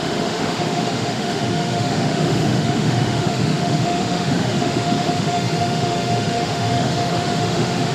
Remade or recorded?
remade